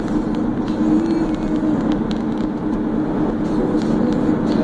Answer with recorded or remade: recorded